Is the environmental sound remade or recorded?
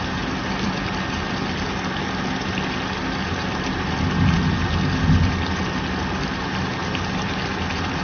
recorded